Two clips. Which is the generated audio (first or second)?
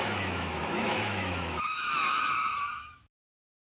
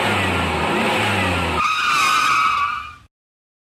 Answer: first